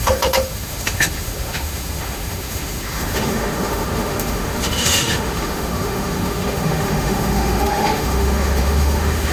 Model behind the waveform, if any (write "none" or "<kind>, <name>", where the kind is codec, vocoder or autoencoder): autoencoder, DAC-VAE